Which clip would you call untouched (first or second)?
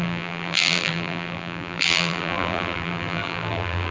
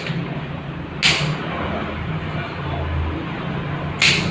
second